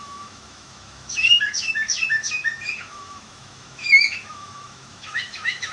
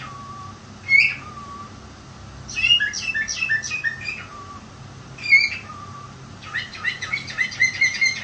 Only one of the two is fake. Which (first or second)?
first